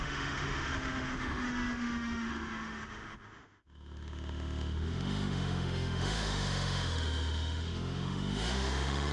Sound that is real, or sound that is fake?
fake